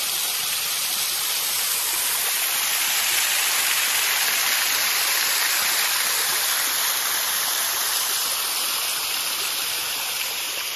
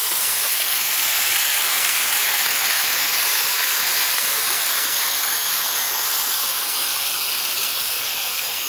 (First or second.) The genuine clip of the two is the first